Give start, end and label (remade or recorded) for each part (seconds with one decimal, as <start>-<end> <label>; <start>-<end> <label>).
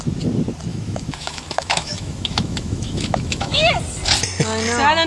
0.0-0.7 recorded; 0.7-3.8 remade; 3.8-5.1 recorded